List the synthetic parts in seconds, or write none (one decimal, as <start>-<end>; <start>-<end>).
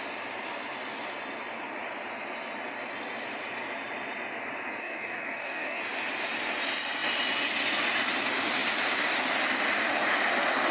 4.8-5.8